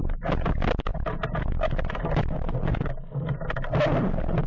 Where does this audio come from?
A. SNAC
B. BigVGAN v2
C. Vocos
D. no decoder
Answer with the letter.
D